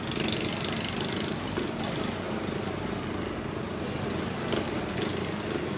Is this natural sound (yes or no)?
yes